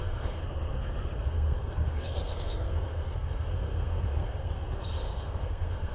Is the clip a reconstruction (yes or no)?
yes